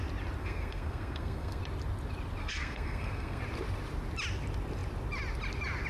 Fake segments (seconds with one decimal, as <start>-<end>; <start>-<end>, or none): 0.4-1.6; 2.4-3.4